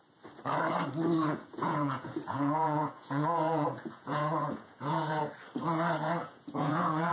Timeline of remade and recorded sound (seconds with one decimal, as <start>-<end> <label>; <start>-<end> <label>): 0.0-1.2 recorded; 1.2-5.2 remade; 5.2-6.2 recorded; 6.2-7.1 remade